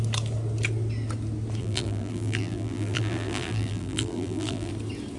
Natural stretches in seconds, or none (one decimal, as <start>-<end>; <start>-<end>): 0.0-1.6; 4.7-5.2